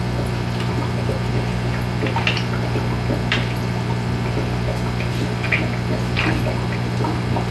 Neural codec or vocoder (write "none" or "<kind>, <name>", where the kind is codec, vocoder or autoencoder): none